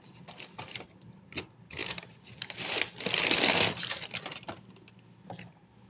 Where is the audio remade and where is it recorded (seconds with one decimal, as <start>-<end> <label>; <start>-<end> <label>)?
0.0-5.9 recorded